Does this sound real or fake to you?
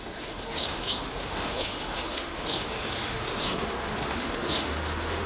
fake